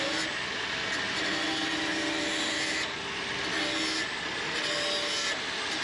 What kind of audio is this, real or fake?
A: real